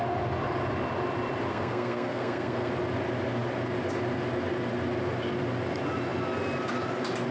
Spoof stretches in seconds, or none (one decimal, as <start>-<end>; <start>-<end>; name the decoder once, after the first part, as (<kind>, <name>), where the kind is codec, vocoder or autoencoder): 1.5-2.7 (codec, SNAC)